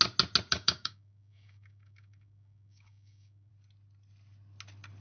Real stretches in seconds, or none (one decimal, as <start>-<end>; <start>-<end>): 0.0-0.5; 3.5-5.0

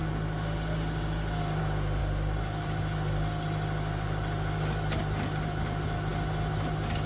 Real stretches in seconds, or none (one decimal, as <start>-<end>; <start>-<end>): 0.0-7.1

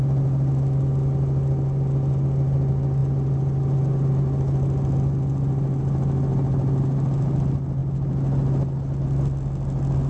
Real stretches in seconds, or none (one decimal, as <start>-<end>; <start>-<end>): 0.0-10.1

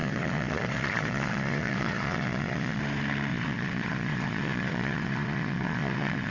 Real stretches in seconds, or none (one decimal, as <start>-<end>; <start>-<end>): 2.8-3.3

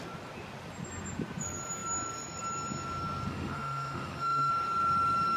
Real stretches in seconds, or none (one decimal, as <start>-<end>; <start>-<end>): 0.0-3.3; 4.5-5.4

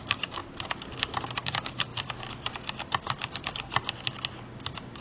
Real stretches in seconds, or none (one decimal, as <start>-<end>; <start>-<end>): 0.4-1.4; 1.9-5.0